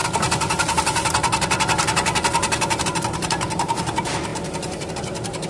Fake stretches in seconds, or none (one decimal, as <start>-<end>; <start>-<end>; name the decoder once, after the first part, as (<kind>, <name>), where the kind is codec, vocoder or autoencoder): 4.3-4.9 (vocoder, BigVGAN v2)